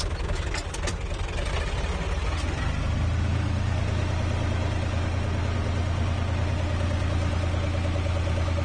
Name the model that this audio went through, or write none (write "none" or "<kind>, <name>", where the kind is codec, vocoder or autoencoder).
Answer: none